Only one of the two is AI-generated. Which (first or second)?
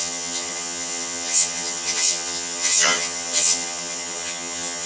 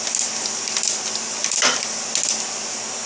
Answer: first